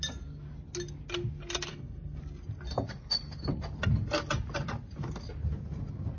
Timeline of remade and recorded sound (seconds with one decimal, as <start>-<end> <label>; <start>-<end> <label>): 0.0-1.7 recorded; 1.7-2.2 remade; 2.2-6.2 recorded